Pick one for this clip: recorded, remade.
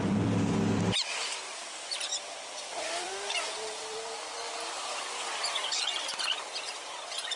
remade